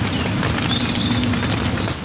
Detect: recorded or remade recorded